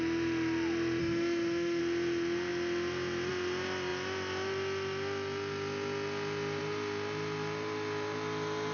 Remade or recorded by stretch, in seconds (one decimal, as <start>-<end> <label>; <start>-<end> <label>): 0.0-1.0 recorded; 1.0-1.8 remade; 1.8-8.7 recorded